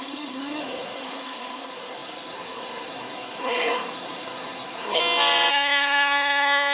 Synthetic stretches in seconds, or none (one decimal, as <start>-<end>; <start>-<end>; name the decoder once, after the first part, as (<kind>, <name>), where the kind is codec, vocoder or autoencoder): 0.0-5.0 (codec, SNAC); 5.5-6.7